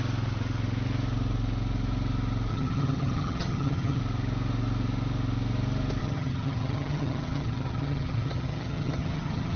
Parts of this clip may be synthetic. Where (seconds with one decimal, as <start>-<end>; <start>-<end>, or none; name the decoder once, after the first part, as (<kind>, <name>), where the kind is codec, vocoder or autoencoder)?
2.5-4.0 (vocoder, HiFi-GAN); 6.0-9.6